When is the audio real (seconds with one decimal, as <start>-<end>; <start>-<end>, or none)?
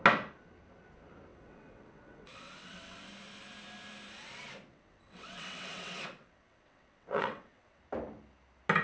0.0-1.3; 3.1-4.7; 7.8-8.8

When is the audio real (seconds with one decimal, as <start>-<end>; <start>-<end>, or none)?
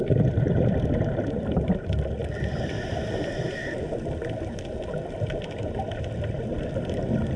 0.0-7.4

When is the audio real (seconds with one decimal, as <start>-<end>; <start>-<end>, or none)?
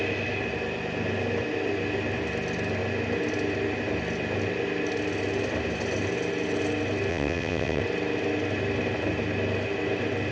0.0-7.1; 7.8-10.3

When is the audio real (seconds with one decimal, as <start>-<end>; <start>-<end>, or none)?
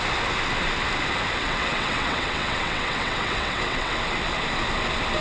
0.0-1.4; 3.9-5.2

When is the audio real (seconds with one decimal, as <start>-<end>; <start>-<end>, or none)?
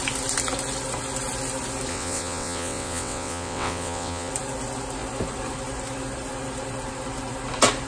0.0-1.9; 4.3-7.9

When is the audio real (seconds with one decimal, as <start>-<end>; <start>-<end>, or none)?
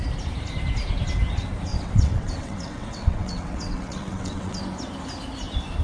0.0-1.7; 4.6-5.8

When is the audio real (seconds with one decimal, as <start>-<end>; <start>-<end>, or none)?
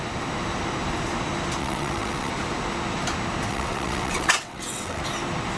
0.0-1.6; 2.3-3.5; 5.0-5.6